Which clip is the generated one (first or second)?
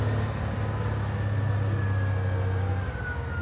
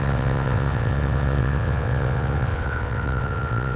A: second